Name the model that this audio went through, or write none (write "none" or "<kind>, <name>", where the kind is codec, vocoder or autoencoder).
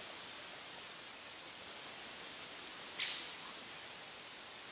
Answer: none